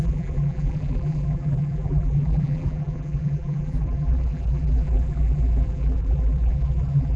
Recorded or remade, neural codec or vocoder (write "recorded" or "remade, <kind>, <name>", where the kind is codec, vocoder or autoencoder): remade, vocoder, BigVGAN v2